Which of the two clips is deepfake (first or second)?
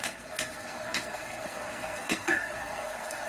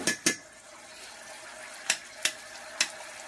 first